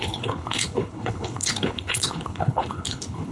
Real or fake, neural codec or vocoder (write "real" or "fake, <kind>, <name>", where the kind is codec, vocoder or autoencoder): fake, codec, HILCodec